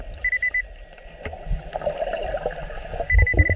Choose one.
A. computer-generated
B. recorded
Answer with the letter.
B